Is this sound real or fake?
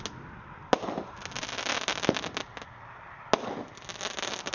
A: real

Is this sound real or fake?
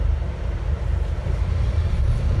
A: fake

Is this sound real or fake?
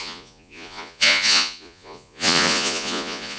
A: fake